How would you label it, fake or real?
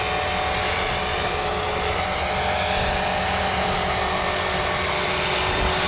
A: real